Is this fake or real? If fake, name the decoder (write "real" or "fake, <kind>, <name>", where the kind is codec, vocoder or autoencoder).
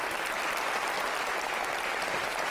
real